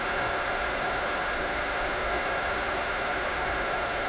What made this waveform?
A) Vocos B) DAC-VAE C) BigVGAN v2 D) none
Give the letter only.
B